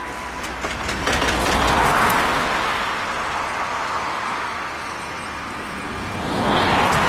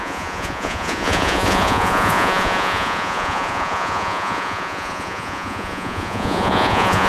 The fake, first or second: second